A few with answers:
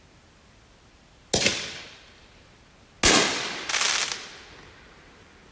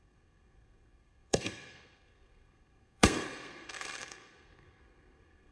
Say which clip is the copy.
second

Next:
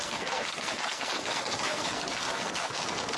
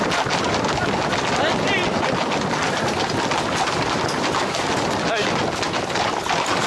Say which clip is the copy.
first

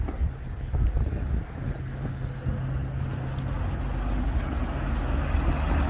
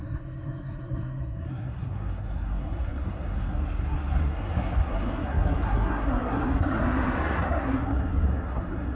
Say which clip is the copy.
second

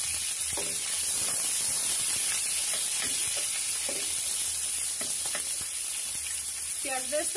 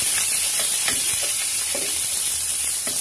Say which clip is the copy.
second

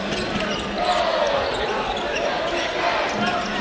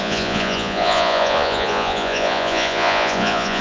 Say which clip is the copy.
second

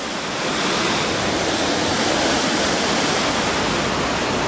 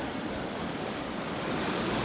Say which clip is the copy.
second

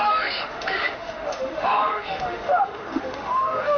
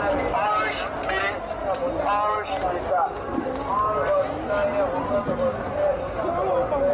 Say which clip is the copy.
first